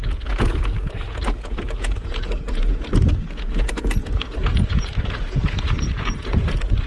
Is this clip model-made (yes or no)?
yes